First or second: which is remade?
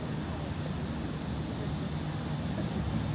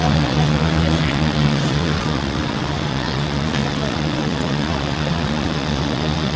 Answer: second